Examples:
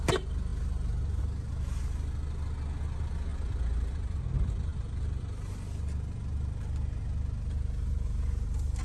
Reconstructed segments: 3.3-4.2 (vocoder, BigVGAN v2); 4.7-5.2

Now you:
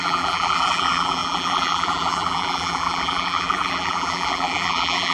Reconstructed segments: 0.0-5.1 (vocoder, BigVGAN v2)

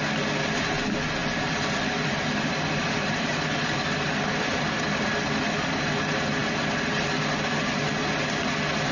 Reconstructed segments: 1.2-5.0 (vocoder, BigVGAN v2)

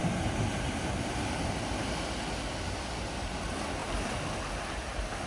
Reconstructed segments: 3.8-5.3 (vocoder, BigVGAN v2)

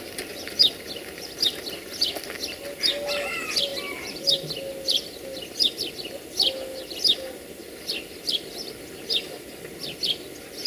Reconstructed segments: none